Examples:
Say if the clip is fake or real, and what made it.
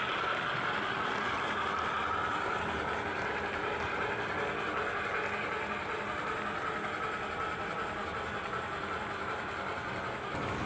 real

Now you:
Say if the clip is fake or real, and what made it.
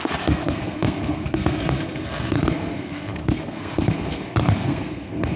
fake, codec, SNAC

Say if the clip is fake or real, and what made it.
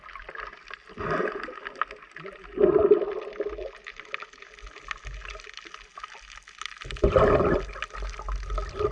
real